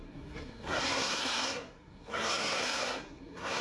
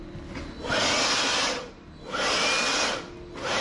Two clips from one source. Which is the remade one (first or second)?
first